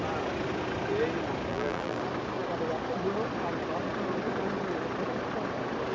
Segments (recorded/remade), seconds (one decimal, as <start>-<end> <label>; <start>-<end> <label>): 0.0-1.5 recorded; 1.5-2.0 remade; 2.0-5.9 recorded